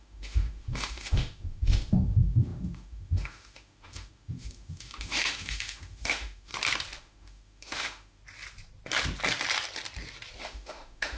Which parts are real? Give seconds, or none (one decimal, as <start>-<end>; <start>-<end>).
6.5-7.0; 8.2-10.4